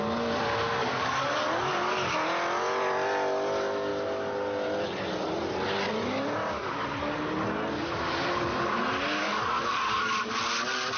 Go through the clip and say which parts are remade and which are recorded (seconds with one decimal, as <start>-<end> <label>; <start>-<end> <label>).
0.0-0.8 recorded; 0.8-2.1 remade; 2.1-9.2 recorded; 9.2-10.3 remade; 10.3-11.0 recorded